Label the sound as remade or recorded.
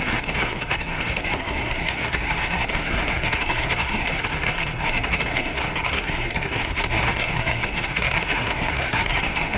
remade